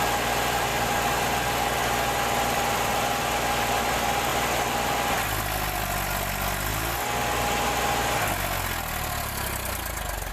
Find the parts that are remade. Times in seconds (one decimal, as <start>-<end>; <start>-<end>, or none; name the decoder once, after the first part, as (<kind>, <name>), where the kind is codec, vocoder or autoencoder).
none